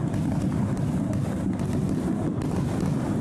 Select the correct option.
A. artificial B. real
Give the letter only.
B